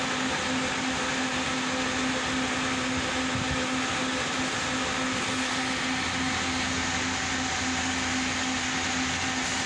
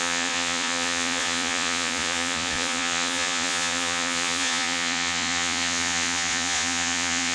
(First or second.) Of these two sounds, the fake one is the second